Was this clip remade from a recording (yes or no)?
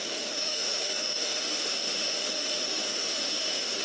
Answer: yes